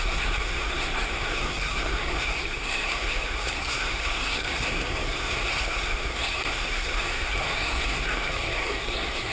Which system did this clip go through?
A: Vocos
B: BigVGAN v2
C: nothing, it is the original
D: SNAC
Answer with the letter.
D